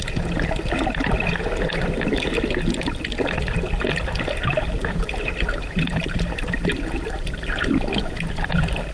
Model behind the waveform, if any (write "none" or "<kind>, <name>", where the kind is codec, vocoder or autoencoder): none